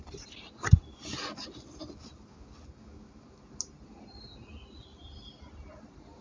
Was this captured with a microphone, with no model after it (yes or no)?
yes